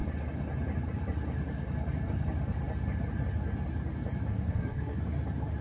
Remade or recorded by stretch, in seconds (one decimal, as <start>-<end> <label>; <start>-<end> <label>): 0.0-4.3 recorded; 4.3-5.0 remade; 5.0-5.6 recorded

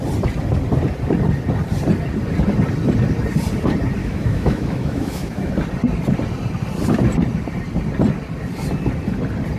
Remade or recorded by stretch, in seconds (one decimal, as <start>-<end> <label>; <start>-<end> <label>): 0.0-4.0 recorded; 4.0-5.5 remade; 5.5-9.6 recorded